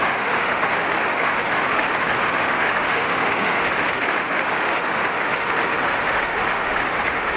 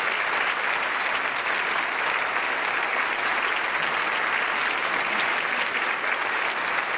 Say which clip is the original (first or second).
second